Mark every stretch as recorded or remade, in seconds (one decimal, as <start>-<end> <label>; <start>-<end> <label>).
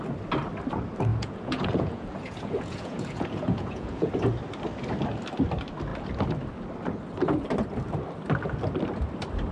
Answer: 0.0-1.1 recorded; 1.1-4.1 remade; 4.1-9.5 recorded